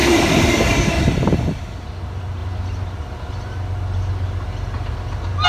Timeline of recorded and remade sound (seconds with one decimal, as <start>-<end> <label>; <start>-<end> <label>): 0.0-5.5 recorded